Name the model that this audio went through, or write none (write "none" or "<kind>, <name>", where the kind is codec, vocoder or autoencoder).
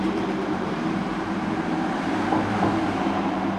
vocoder, BigVGAN v2